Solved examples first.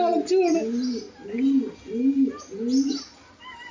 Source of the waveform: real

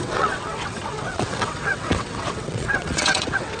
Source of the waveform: fake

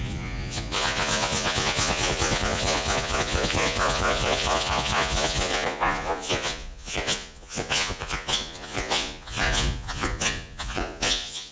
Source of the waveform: fake